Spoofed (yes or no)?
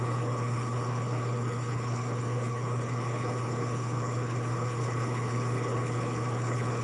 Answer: yes